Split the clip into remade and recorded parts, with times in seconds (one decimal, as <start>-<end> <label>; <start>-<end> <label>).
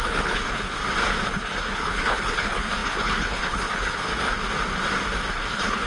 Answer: 0.0-0.8 remade; 0.8-1.3 recorded; 1.3-4.1 remade; 4.1-5.3 recorded; 5.3-5.9 remade